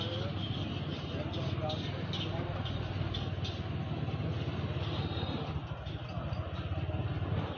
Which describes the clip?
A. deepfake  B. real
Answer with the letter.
B